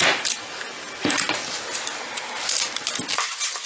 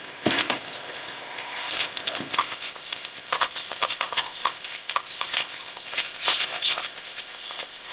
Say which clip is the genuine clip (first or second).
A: first